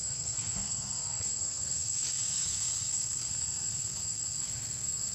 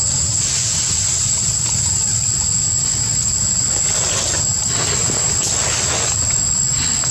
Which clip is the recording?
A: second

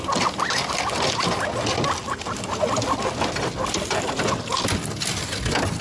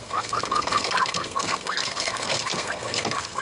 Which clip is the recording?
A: first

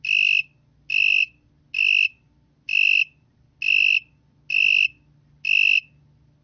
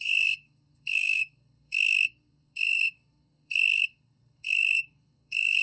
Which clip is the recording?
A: first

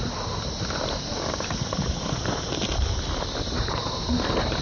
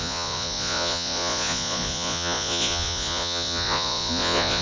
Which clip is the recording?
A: first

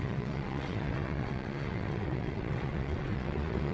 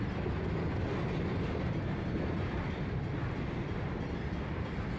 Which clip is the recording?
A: second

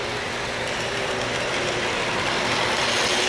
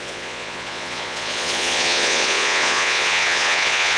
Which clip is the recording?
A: first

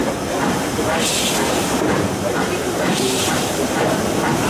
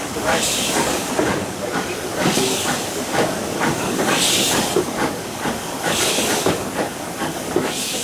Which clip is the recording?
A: first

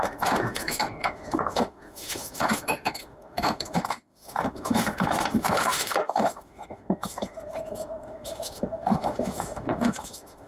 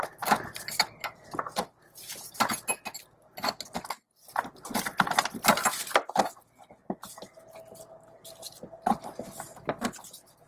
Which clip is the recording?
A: second